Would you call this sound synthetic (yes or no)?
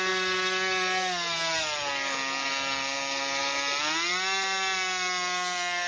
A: no